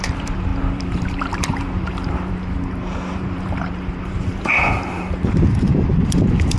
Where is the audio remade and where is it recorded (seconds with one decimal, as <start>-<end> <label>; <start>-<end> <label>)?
0.0-6.6 remade